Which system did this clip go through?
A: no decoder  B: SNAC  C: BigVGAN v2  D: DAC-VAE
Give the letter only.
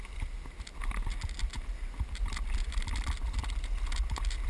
A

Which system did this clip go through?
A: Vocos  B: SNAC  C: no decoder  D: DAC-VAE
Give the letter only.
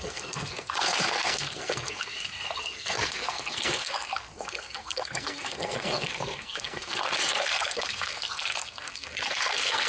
B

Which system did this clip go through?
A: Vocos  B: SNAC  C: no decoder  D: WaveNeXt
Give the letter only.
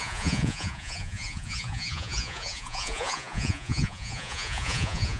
A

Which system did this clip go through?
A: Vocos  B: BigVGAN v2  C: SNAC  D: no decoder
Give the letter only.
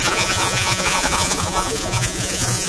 A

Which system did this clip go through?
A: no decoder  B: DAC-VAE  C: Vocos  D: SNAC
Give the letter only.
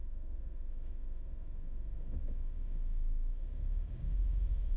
B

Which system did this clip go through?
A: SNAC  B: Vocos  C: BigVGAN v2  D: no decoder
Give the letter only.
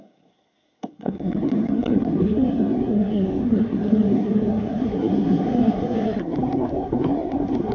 A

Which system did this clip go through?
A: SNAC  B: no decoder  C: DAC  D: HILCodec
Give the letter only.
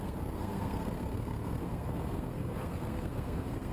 A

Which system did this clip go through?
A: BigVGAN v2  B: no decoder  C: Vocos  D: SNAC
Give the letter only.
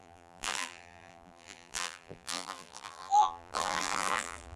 A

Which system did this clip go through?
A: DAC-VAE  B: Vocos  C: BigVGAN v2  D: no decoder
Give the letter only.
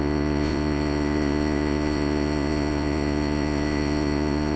B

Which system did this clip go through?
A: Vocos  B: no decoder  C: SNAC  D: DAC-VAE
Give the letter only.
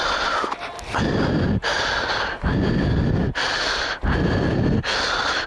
B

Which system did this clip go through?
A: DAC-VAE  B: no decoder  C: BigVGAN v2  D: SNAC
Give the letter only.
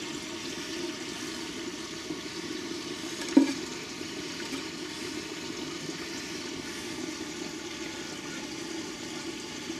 B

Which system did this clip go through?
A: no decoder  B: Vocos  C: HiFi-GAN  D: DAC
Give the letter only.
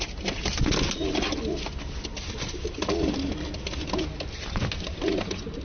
A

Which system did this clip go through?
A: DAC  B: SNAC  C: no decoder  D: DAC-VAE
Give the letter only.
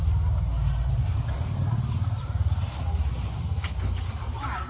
C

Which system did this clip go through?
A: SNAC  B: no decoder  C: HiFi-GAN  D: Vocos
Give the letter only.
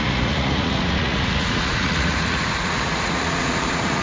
D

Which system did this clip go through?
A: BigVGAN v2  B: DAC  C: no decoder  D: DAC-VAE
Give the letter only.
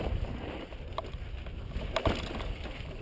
C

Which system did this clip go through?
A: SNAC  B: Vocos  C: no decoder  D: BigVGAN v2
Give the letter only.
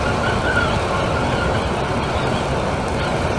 C